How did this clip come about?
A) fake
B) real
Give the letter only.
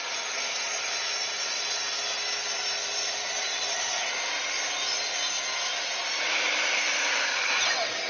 A